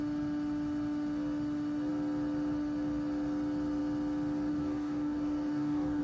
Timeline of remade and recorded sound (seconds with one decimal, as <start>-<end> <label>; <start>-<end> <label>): 0.0-4.5 recorded; 4.5-6.0 remade